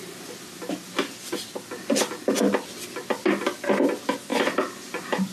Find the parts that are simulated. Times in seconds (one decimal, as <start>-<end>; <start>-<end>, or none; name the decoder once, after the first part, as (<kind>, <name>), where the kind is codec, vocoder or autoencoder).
4.3-5.3 (vocoder, BigVGAN v2)